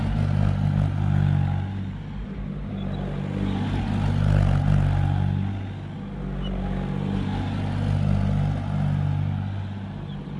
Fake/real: real